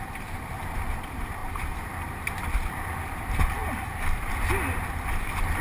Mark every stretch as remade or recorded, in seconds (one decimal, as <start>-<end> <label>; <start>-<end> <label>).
0.0-1.4 recorded; 1.4-2.3 remade; 2.3-3.6 recorded; 3.6-4.3 remade; 4.3-5.6 recorded